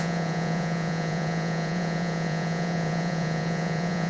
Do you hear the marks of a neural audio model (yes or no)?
yes